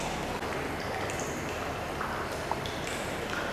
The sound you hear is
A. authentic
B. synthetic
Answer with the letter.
A